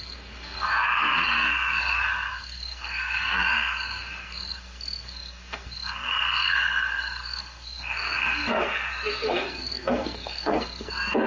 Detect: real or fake fake